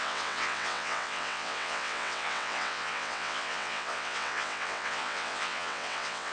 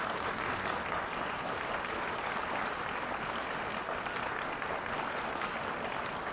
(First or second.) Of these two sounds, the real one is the second